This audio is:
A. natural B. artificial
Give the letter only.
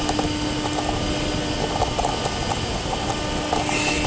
A